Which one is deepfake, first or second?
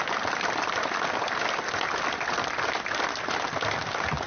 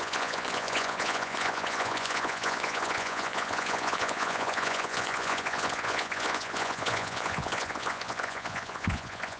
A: second